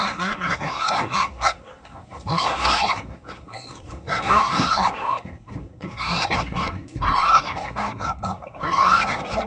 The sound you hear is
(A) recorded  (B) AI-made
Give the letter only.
B